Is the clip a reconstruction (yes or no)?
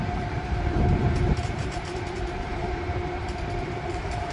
yes